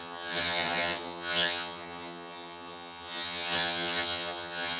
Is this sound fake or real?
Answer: fake